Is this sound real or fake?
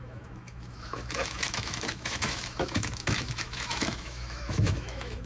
fake